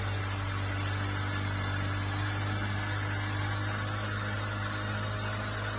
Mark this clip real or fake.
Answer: real